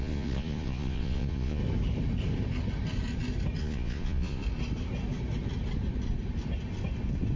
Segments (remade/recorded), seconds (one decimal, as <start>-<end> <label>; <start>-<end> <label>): 0.0-1.6 remade; 1.6-3.6 recorded; 3.6-4.4 remade; 4.4-7.4 recorded